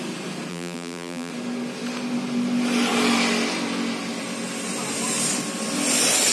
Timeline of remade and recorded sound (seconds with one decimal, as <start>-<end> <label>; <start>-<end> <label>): 0.0-0.5 recorded; 0.5-1.3 remade; 1.3-6.3 recorded